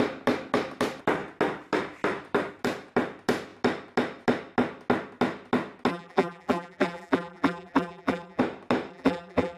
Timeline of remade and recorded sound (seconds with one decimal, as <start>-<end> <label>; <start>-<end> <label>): 0.0-5.9 recorded; 5.9-8.4 remade; 8.4-8.9 recorded; 8.9-9.6 remade